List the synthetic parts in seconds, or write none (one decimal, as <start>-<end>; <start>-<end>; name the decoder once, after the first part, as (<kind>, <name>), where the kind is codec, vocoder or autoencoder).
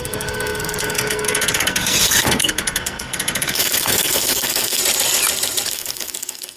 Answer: 0.0-4.8 (codec, SNAC); 5.7-6.6